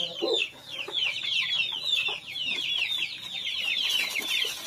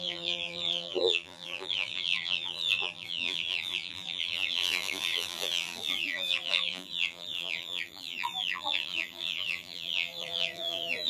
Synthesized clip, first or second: second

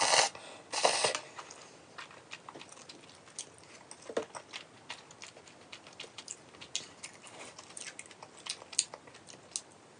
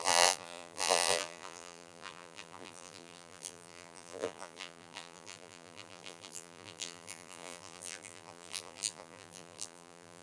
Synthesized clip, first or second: second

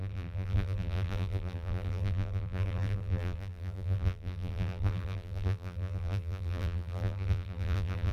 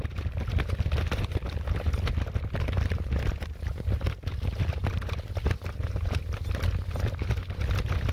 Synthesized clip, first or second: first